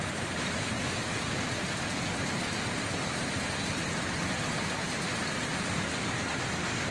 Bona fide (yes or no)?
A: yes